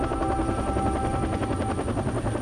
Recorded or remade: recorded